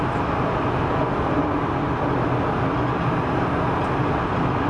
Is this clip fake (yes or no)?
no